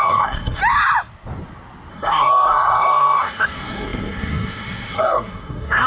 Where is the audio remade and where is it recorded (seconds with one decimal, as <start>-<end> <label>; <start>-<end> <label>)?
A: 0.0-0.6 remade; 0.6-1.9 recorded; 1.9-5.9 remade